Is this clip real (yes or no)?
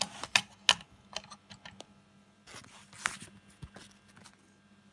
yes